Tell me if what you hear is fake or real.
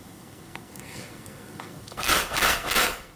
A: fake